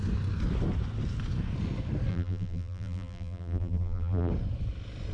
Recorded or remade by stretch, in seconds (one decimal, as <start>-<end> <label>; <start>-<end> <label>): 0.0-2.1 recorded; 2.1-4.3 remade; 4.3-5.1 recorded